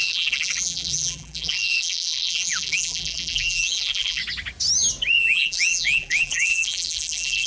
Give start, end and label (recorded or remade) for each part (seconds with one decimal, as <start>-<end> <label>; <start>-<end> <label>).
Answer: 0.0-4.2 remade; 4.2-5.2 recorded; 5.2-7.5 remade